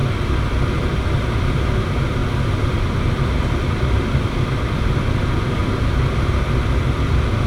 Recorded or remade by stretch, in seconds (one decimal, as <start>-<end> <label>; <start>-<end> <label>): 0.0-0.6 recorded; 0.6-5.6 remade; 5.6-6.8 recorded; 6.8-7.5 remade